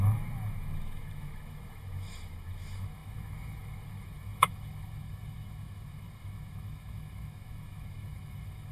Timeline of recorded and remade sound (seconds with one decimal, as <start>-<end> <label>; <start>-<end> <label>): 0.0-8.7 remade